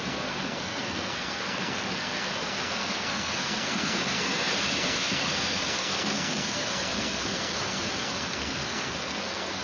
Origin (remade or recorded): remade